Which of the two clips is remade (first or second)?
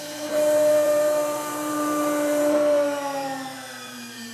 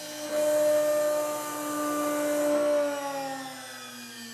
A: first